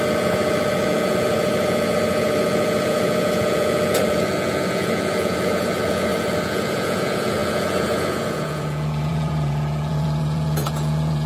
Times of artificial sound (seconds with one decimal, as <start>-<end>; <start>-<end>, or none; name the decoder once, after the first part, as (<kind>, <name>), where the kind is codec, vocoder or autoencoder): 0.0-11.3 (vocoder, Vocos)